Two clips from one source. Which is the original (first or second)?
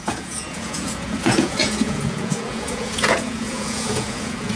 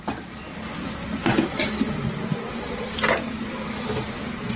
second